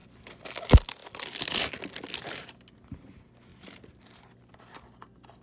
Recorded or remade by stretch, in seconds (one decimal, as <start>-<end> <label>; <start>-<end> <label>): 0.0-5.4 recorded